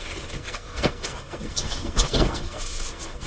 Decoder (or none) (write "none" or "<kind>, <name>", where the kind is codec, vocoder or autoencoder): codec, SNAC